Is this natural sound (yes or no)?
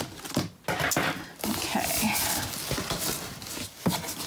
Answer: yes